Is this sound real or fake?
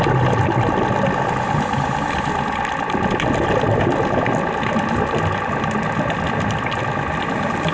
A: real